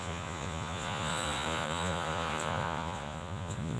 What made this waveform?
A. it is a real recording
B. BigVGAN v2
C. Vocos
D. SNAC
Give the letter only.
C